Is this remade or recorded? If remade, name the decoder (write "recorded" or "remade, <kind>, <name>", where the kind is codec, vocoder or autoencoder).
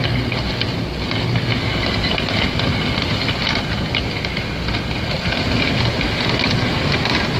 recorded